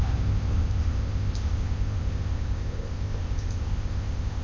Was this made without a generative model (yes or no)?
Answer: no